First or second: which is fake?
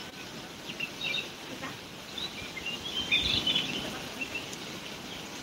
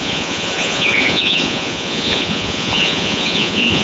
second